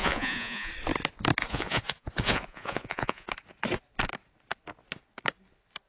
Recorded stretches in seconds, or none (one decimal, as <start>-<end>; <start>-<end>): 0.7-1.4; 3.3-5.9